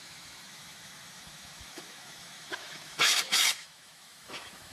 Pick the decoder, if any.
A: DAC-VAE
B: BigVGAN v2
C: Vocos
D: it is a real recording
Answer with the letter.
A